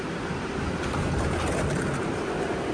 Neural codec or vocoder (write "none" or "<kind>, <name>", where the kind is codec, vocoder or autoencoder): none